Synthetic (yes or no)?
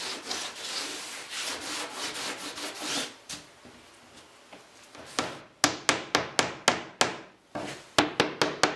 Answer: no